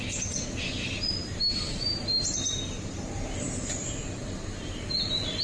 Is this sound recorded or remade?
recorded